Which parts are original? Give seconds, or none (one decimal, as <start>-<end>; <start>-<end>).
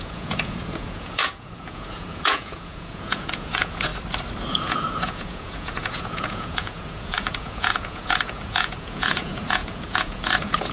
3.9-4.5